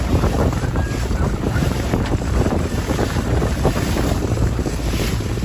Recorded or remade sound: remade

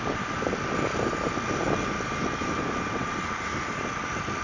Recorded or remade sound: recorded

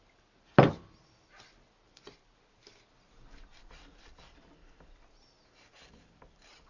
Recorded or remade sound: recorded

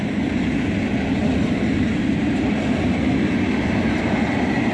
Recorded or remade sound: recorded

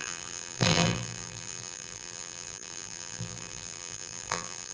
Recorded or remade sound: remade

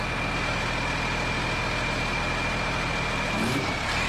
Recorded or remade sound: recorded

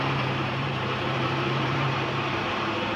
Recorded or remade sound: remade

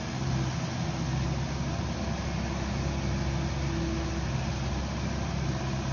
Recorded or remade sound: recorded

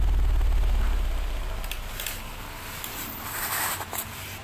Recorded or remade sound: recorded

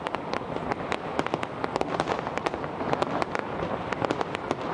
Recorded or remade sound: recorded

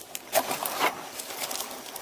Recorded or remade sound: recorded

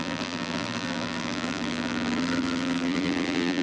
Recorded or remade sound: remade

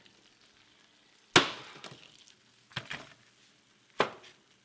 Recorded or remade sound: recorded